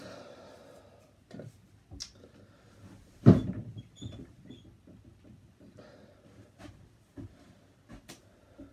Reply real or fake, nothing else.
real